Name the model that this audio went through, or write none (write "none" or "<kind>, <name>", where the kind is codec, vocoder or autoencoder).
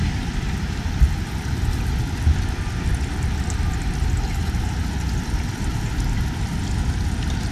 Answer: none